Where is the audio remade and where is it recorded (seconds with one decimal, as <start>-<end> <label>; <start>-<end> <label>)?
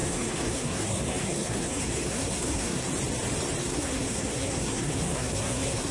0.0-2.9 remade; 2.9-3.6 recorded; 3.6-5.9 remade